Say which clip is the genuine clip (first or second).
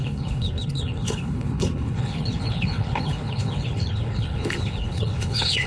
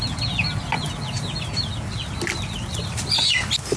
second